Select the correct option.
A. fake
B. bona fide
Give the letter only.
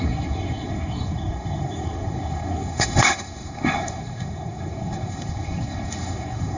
A